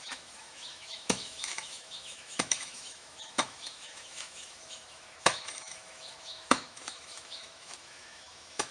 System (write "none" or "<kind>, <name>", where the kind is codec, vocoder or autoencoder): autoencoder, DAC-VAE